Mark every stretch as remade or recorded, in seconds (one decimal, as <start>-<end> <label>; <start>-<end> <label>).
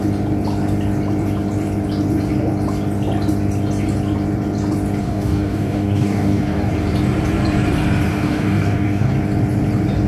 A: 0.0-5.0 recorded; 5.0-6.7 remade; 6.7-8.1 recorded; 8.1-9.1 remade; 9.1-10.1 recorded